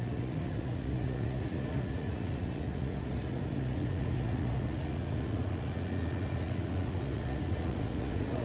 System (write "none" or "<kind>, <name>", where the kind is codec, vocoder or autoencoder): vocoder, Vocos